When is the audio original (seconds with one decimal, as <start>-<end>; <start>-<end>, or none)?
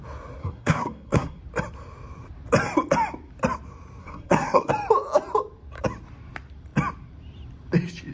0.0-0.4; 1.4-4.0; 4.7-8.1